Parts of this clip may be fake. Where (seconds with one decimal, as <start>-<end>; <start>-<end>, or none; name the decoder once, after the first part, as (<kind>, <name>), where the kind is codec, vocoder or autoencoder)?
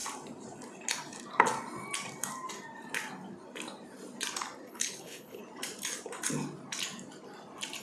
4.7-5.4 (codec, HILCodec)